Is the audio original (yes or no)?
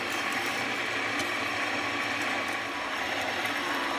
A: yes